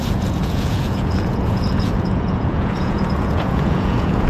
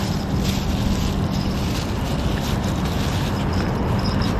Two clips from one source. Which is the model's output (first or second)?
first